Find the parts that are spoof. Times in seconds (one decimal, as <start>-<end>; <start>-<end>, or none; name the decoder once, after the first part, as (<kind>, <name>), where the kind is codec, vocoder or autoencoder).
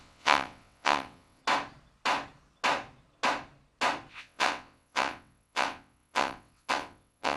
0.0-1.4 (vocoder, WaveNeXt); 4.1-7.4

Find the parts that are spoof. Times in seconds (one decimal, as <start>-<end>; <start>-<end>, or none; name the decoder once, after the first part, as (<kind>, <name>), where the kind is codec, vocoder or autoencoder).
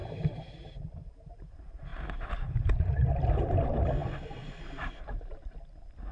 0.0-1.4 (vocoder, BigVGAN v2); 1.9-3.1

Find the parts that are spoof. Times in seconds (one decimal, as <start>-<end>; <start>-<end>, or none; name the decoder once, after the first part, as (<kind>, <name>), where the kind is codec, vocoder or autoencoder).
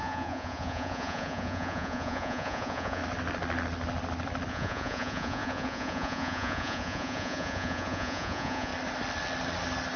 0.0-3.0 (vocoder, Vocos); 4.5-8.7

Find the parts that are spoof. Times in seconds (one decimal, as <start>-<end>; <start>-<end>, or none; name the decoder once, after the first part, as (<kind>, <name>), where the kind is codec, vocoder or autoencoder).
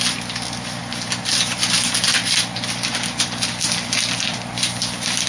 none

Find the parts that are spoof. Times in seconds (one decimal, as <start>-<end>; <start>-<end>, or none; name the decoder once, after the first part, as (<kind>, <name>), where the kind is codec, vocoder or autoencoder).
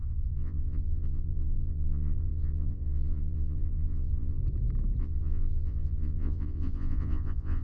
0.0-4.4 (vocoder, Vocos); 5.0-7.6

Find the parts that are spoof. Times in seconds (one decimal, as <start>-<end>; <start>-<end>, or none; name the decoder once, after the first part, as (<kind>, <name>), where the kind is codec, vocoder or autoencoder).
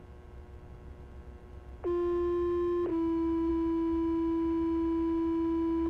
2.9-3.5 (autoencoder, DAC-VAE)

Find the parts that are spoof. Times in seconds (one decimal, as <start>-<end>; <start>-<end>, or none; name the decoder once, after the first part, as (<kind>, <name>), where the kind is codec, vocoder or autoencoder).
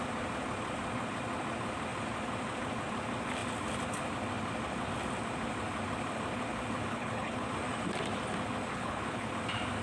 6.9-7.5 (codec, HILCodec); 8.7-9.3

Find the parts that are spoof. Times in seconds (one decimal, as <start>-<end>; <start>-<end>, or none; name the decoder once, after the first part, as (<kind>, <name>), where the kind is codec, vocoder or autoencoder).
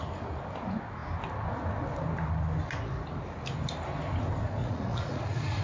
4.6-5.6 (vocoder, Vocos)